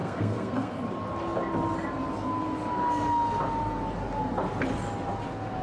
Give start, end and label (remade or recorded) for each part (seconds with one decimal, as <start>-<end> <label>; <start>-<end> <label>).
0.0-0.8 remade; 0.8-5.6 recorded